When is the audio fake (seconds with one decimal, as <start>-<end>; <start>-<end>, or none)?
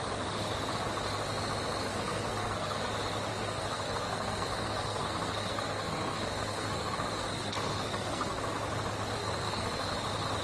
1.9-2.9; 3.3-8.4; 9.2-9.9